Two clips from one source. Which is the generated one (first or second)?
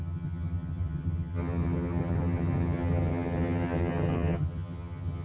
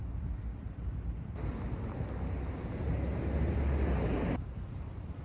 first